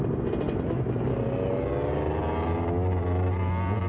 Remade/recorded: recorded